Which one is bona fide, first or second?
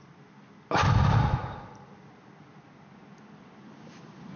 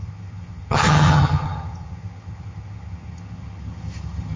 first